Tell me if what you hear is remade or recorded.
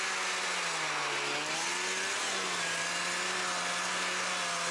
recorded